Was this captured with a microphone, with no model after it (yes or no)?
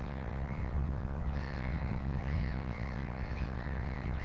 no